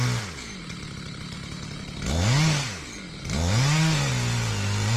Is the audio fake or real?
real